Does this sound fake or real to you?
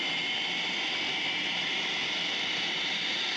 real